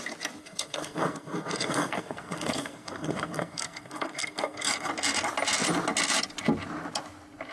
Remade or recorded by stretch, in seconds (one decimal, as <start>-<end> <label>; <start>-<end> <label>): 0.0-0.4 recorded; 0.4-4.9 remade; 4.9-7.5 recorded